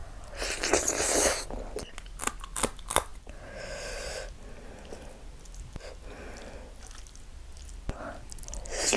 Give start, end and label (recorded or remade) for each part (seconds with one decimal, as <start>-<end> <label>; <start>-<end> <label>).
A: 0.0-9.0 recorded